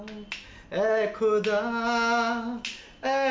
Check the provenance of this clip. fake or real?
real